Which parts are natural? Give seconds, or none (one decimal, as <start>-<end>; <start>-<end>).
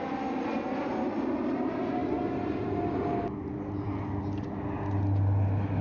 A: 0.0-5.8